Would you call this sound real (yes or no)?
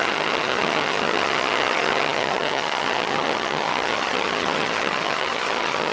no